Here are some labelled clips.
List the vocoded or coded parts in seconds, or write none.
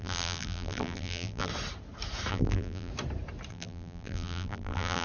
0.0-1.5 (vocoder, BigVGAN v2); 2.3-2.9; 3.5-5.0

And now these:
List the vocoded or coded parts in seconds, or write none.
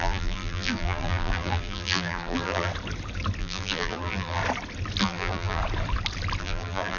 0.0-2.7 (vocoder, BigVGAN v2); 3.4-4.4; 5.0-5.6; 6.4-7.0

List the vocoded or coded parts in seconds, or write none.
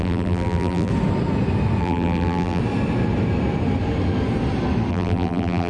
0.0-0.9 (vocoder, BigVGAN v2); 1.8-2.6; 4.9-5.7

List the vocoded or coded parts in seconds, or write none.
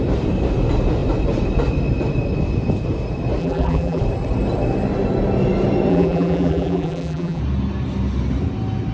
3.4-4.0 (vocoder, BigVGAN v2); 5.9-7.4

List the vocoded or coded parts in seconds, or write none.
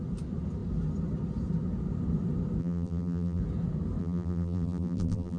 2.6-3.4 (vocoder, BigVGAN v2); 4.0-5.4